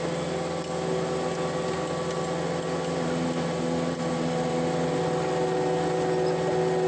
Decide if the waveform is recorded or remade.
recorded